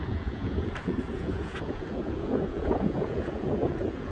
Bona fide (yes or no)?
no